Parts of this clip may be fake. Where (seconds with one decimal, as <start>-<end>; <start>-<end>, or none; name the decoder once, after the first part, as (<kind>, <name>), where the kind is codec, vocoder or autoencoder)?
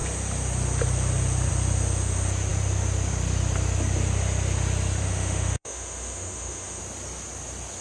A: 5.0-6.8 (autoencoder, DAC-VAE)